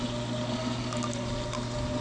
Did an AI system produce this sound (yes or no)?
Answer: no